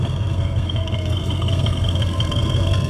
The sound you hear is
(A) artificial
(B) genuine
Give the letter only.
A